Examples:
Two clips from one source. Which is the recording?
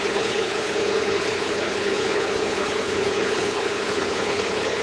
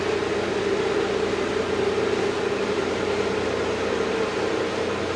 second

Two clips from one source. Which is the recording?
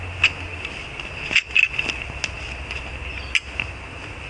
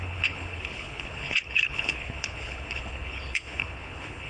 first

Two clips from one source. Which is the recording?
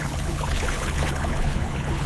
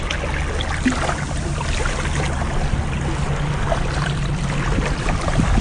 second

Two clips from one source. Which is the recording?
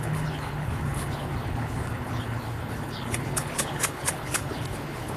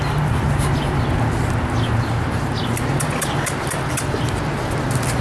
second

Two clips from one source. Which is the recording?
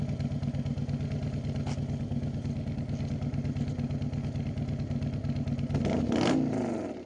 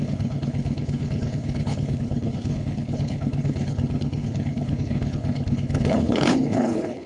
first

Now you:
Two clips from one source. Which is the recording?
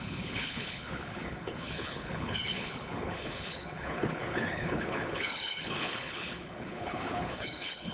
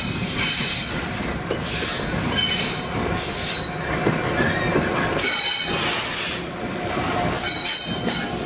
second